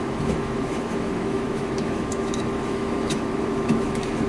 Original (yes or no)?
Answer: no